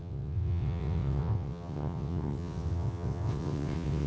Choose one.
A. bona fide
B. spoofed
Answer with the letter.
B